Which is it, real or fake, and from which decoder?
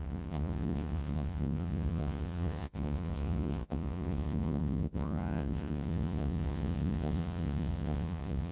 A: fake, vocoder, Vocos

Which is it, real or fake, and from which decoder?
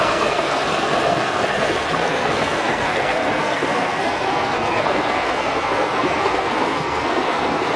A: fake, codec, SNAC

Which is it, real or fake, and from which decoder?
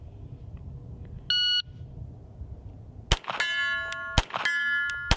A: real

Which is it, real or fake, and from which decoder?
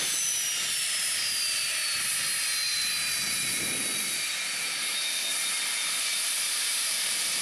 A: fake, vocoder, BigVGAN v2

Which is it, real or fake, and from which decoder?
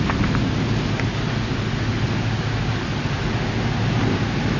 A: real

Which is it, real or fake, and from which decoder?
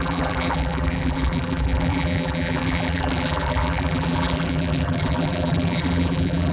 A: fake, vocoder, BigVGAN v2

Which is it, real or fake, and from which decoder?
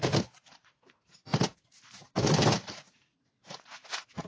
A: fake, vocoder, BigVGAN v2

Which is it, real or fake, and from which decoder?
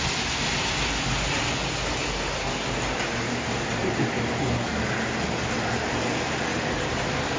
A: real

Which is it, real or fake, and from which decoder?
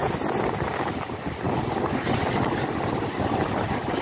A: real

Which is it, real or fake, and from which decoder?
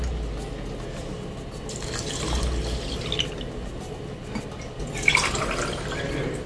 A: real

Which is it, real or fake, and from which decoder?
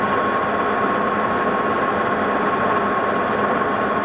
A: real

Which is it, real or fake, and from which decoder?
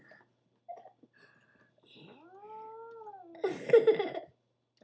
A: real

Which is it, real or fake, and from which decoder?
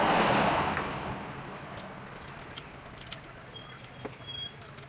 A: real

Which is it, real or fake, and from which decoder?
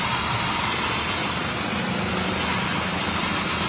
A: real